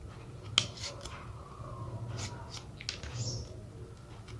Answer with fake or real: real